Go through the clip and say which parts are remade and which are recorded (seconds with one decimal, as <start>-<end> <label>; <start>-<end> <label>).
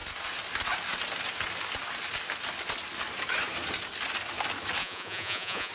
0.0-4.8 recorded; 4.8-5.7 remade